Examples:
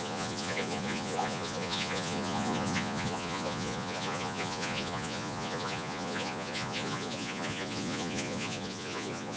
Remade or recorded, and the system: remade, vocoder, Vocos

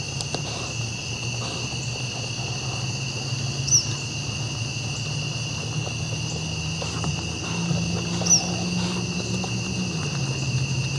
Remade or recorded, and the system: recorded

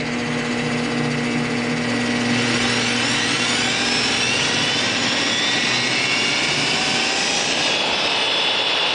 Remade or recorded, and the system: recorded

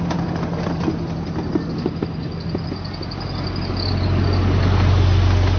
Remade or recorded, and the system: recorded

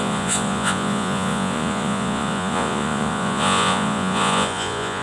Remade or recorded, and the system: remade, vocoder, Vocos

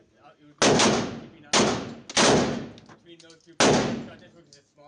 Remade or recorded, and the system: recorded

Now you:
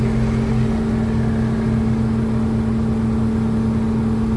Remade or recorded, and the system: recorded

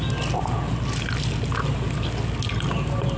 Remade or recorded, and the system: recorded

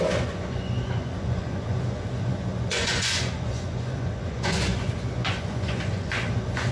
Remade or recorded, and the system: remade, vocoder, Vocos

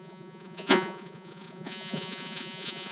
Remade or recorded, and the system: remade, vocoder, Vocos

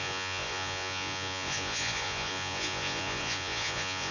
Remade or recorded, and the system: remade, vocoder, Vocos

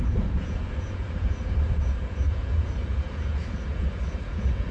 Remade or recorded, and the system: remade, vocoder, Vocos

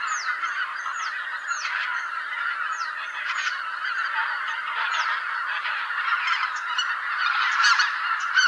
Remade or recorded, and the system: recorded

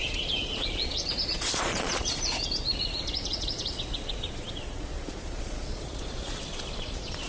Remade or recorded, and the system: remade, vocoder, Vocos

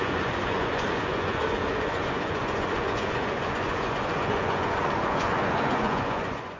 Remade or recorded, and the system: remade, vocoder, Vocos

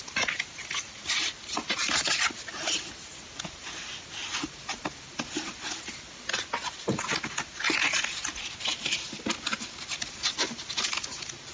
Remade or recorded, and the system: recorded